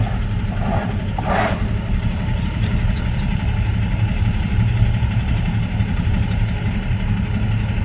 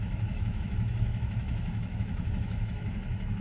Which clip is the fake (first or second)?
second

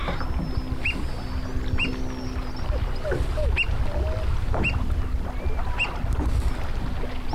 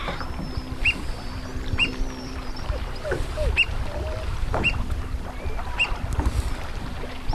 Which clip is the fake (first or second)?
second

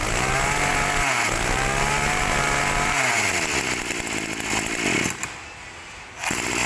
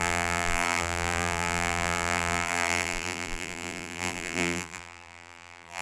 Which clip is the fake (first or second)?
second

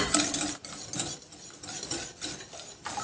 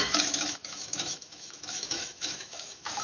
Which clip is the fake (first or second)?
second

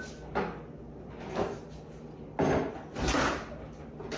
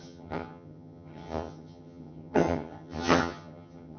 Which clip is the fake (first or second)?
second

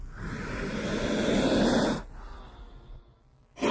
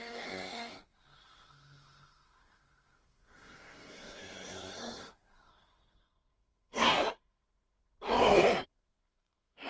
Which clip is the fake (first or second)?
second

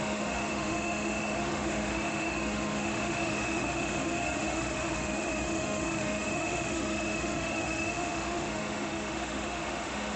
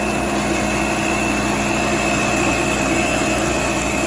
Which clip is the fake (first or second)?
first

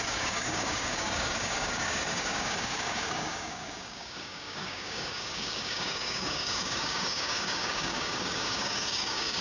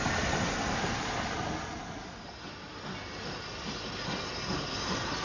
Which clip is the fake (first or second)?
first